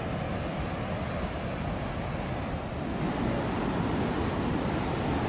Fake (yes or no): no